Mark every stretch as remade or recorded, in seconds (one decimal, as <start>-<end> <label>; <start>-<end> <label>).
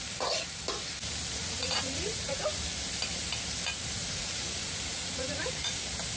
0.0-1.4 recorded; 1.4-2.6 remade; 2.6-4.0 recorded; 4.0-5.8 remade; 5.8-6.2 recorded